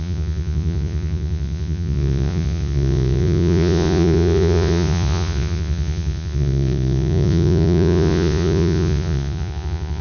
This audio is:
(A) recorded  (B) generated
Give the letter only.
B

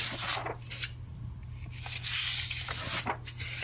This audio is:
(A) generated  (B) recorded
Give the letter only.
B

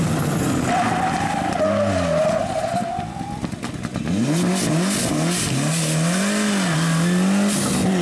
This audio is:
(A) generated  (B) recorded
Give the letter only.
B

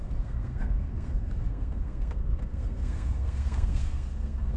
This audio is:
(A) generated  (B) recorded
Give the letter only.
A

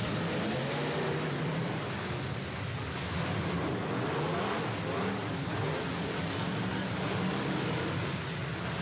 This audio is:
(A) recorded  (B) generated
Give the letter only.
A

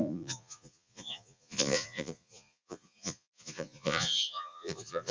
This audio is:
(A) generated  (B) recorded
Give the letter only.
A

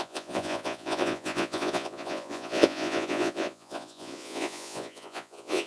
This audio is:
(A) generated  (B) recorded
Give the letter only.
A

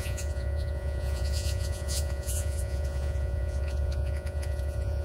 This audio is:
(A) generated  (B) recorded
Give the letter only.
A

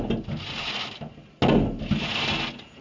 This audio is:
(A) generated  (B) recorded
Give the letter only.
B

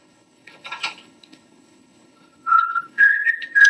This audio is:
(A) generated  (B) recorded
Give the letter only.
A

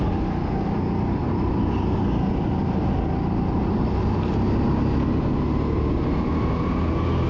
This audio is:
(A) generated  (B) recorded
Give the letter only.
B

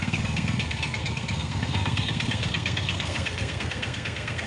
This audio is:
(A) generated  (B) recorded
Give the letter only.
A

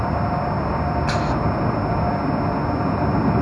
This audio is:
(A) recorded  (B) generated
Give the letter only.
A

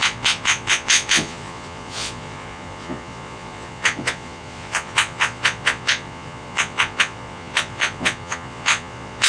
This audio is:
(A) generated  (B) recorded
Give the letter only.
A